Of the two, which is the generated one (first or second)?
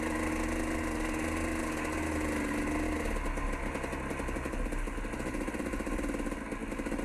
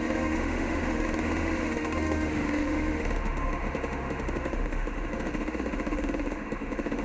second